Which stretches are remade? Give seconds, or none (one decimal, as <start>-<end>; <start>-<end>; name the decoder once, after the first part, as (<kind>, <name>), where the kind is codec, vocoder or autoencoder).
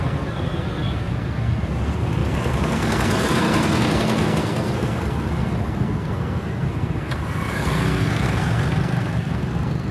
0.0-9.9 (codec, SNAC)